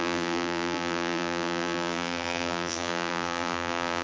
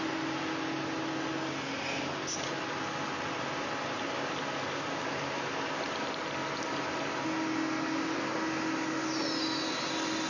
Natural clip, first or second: second